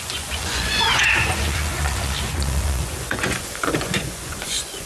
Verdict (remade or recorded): remade